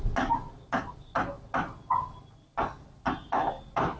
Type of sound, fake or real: real